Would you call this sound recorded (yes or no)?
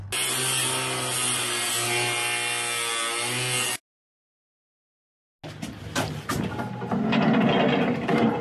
yes